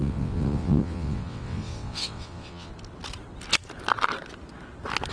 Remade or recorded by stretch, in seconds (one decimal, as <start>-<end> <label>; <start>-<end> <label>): 0.0-2.7 remade; 2.7-5.1 recorded